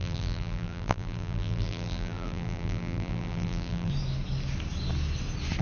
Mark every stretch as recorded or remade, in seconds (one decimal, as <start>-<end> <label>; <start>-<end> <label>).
0.0-3.9 remade; 3.9-5.6 recorded